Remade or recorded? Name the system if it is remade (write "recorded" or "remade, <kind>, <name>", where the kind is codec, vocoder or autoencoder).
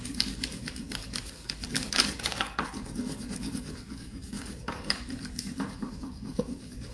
remade, codec, DAC